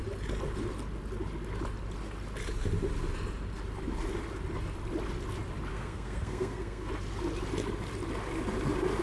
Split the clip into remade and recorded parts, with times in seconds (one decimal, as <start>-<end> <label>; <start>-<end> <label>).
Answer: 0.0-5.7 recorded; 5.7-6.9 remade; 6.9-9.0 recorded

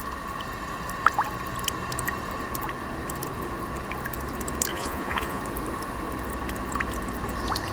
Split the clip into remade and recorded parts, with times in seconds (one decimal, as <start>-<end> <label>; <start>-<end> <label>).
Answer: 0.0-4.7 recorded; 4.7-5.4 remade; 5.4-7.7 recorded

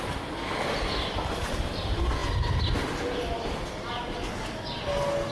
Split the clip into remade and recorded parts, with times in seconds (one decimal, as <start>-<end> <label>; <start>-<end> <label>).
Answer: 0.0-5.3 recorded

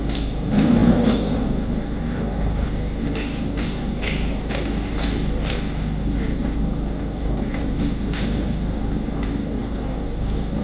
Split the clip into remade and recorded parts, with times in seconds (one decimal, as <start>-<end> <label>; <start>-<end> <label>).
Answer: 0.0-10.6 remade

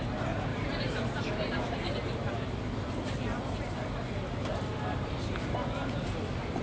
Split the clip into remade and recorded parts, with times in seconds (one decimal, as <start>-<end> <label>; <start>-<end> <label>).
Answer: 0.0-0.5 recorded; 0.5-2.9 remade; 2.9-4.5 recorded; 4.5-6.6 remade